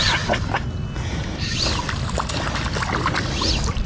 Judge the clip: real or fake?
real